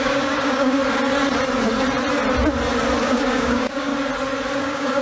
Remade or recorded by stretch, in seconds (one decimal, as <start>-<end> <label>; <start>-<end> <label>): 0.0-0.8 remade; 0.8-3.0 recorded; 3.0-3.9 remade; 3.9-4.6 recorded; 4.6-5.0 remade